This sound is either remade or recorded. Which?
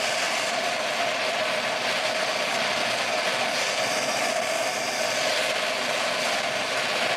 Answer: recorded